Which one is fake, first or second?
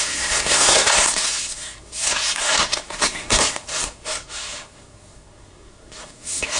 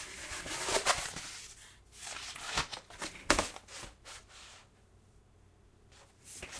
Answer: first